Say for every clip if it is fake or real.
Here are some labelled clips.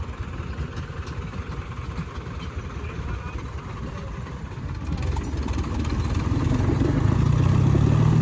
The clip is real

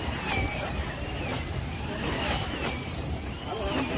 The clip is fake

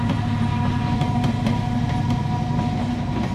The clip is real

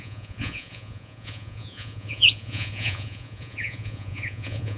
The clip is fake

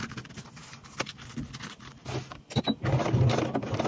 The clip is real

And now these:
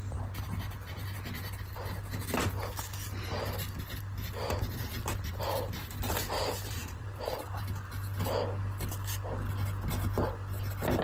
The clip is real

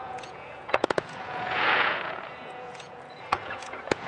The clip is fake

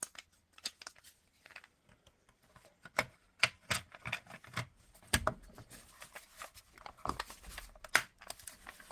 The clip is real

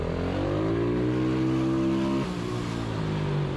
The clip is real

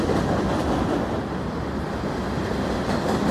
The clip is real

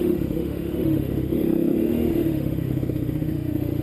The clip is fake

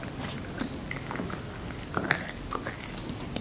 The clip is real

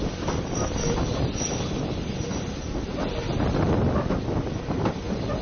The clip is real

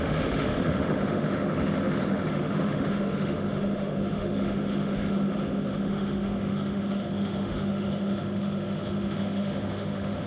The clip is fake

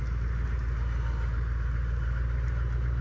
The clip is real